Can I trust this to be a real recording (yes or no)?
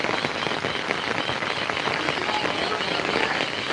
yes